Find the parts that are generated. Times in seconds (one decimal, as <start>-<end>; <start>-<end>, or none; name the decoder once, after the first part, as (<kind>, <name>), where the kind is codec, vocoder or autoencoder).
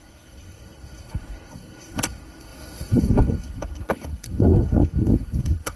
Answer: 0.0-5.8 (codec, SNAC)